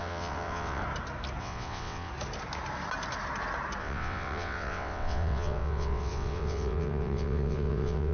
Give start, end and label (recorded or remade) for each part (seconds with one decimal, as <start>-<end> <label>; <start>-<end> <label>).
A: 0.0-0.8 remade; 0.8-1.4 recorded; 1.4-2.1 remade; 2.1-3.8 recorded; 3.8-8.1 remade